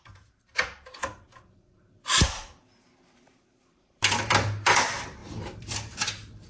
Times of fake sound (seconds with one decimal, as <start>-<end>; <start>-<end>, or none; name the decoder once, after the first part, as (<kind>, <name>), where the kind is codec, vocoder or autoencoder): 0.0-6.5 (vocoder, BigVGAN v2)